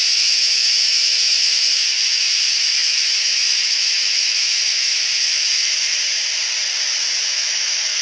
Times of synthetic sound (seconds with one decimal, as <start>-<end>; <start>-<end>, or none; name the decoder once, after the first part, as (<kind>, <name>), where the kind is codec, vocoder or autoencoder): 0.0-6.0 (autoencoder, DAC-VAE); 7.2-8.0